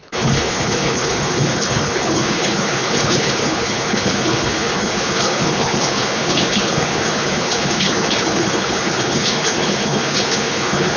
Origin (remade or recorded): remade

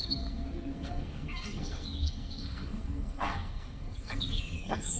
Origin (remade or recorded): remade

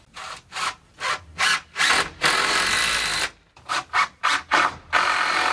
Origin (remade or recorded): recorded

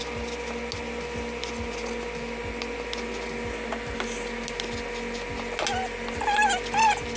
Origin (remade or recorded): recorded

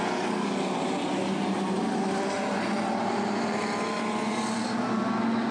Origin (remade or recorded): recorded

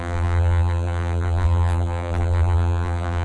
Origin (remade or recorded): remade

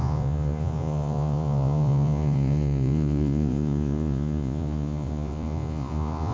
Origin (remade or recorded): remade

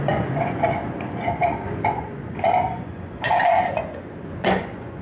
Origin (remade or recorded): remade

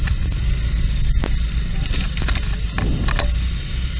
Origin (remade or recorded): recorded